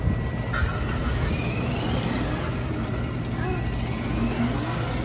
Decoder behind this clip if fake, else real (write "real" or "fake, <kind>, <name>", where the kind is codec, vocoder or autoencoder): real